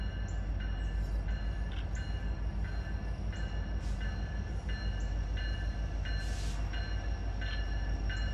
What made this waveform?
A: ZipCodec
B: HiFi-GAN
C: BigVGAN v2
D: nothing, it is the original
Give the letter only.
D